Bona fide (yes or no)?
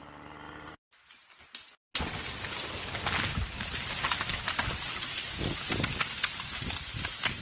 yes